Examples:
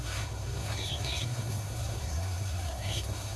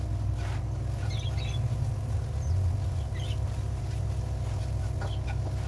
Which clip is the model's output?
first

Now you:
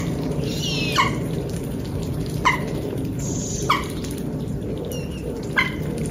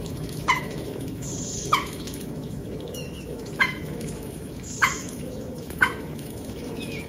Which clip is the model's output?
second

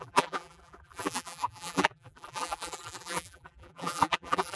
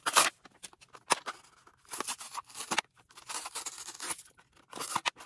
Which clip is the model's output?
first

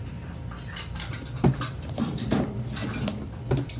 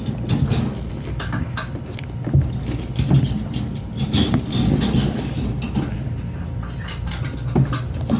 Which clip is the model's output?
first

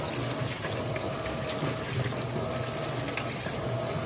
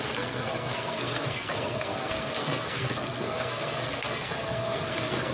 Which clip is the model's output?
second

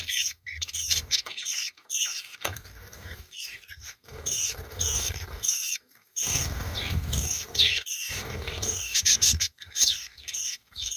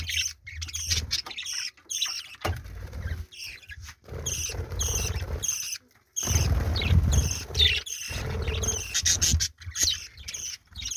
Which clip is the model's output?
first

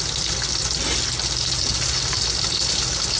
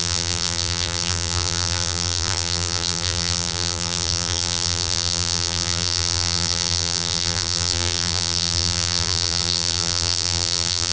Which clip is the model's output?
second